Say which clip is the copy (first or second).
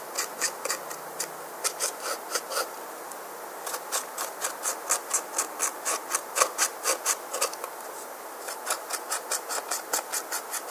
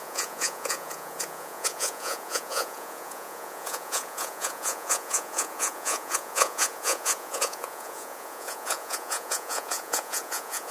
second